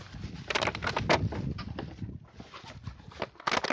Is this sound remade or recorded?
recorded